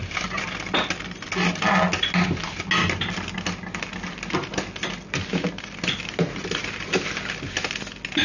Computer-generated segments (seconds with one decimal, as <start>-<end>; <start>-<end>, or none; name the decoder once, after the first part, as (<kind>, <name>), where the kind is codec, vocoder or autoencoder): none

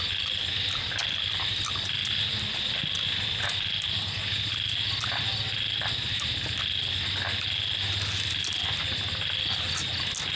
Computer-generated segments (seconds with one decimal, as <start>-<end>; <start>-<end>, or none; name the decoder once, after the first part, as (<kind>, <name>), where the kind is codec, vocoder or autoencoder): none

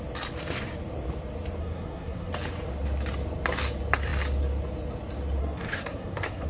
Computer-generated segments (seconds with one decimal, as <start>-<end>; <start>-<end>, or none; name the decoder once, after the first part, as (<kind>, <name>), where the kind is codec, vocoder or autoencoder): 1.6-2.3 (codec, SNAC); 5.4-6.5